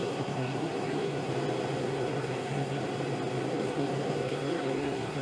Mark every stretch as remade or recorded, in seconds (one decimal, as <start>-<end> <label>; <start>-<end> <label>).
0.0-1.3 remade; 1.3-1.8 recorded; 1.8-2.8 remade; 2.8-3.5 recorded; 3.5-5.2 remade